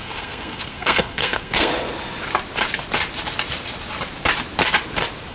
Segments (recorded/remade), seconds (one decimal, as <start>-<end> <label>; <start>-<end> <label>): 0.0-1.7 remade; 1.7-5.3 recorded